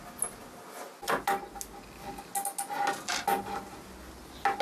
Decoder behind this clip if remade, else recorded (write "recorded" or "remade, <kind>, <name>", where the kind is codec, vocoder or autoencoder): recorded